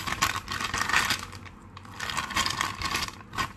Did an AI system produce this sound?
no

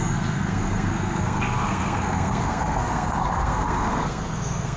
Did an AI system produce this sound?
yes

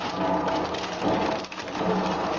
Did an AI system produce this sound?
no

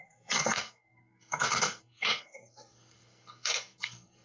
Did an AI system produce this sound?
yes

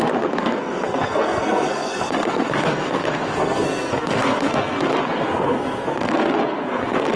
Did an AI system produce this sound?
yes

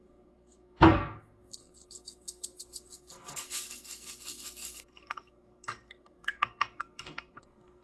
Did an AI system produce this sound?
yes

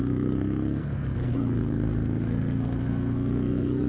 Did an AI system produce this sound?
yes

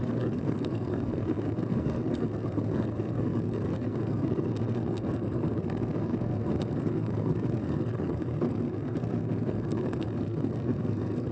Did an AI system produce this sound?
yes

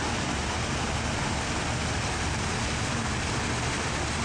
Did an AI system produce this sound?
no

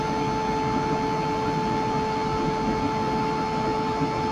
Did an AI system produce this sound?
no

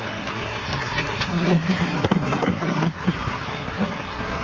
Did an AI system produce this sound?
yes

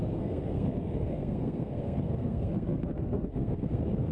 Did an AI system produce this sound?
yes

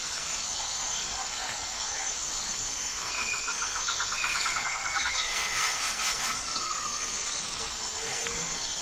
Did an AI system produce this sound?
yes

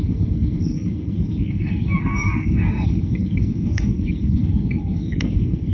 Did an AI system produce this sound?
yes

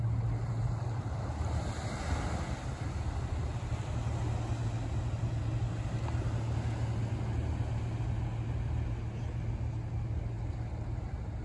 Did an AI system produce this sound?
no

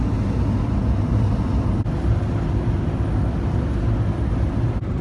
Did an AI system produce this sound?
no